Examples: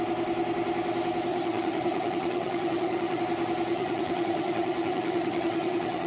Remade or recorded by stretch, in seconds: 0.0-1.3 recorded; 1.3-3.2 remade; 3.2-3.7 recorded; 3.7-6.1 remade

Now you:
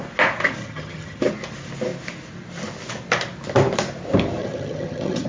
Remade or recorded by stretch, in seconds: 0.0-0.6 recorded; 0.6-1.2 remade; 1.2-4.4 recorded; 4.4-5.3 remade